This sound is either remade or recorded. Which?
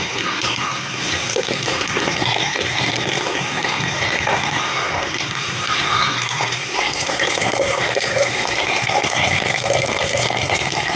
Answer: remade